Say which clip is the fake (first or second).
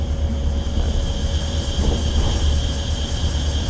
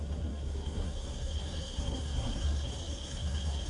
second